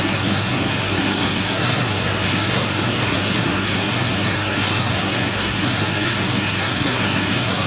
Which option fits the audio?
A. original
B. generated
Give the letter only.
B